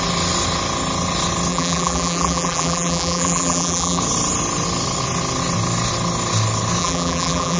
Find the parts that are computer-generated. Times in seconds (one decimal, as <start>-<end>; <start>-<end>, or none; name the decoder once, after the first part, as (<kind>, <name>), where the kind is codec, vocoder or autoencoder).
1.5-4.0 (vocoder, BigVGAN v2); 6.8-7.6